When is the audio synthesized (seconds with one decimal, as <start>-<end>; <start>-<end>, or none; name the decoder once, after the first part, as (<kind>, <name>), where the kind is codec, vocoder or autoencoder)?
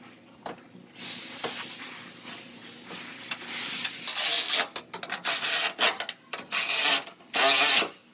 1.4-1.9 (vocoder, BigVGAN v2)